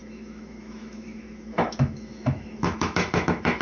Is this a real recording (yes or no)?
no